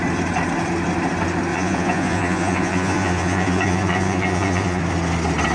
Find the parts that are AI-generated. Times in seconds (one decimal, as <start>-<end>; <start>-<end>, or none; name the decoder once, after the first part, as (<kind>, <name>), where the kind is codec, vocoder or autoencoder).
1.5-4.8 (vocoder, Vocos)

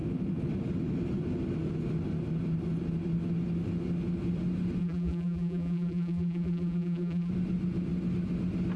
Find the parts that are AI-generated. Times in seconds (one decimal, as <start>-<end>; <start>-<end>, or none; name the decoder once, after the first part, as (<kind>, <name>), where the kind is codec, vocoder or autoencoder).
4.8-7.3 (vocoder, BigVGAN v2)

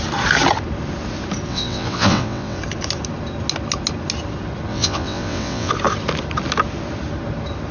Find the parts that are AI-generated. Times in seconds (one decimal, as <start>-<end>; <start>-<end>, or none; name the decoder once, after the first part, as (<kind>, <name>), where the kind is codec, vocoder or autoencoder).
1.5-2.6 (vocoder, WaveNeXt); 4.7-5.7

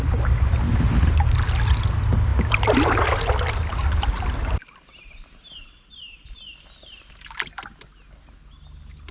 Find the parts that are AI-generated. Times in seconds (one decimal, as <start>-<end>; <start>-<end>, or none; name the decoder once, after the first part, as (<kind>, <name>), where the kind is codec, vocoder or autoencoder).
none

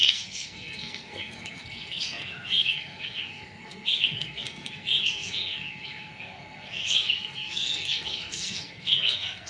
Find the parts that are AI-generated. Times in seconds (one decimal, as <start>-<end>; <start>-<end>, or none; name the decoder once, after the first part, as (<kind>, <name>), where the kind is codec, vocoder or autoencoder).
0.0-9.5 (codec, SNAC)

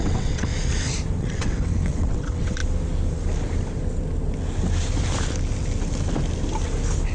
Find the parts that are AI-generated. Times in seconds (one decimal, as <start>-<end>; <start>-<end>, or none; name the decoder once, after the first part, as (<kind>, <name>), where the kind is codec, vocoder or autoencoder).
0.0-0.5 (vocoder, WaveNeXt); 1.2-2.6

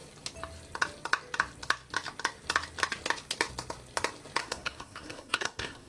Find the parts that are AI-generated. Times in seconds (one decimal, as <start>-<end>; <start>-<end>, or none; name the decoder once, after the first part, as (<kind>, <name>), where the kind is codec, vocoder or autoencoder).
4.4-5.9 (codec, SNAC)

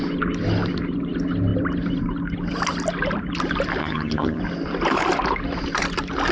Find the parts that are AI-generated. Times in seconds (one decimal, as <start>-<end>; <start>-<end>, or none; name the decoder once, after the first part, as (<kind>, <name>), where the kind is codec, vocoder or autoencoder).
3.8-4.4 (vocoder, HiFi-GAN)